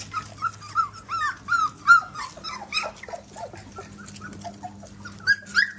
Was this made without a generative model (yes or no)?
yes